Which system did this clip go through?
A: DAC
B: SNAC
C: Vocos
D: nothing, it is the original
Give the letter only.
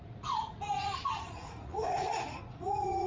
C